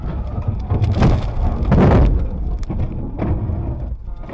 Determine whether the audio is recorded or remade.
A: recorded